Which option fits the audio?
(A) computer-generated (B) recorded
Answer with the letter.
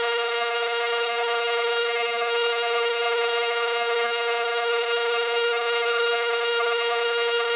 A